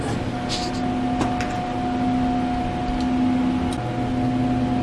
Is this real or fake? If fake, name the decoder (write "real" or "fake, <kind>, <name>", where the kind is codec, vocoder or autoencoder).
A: real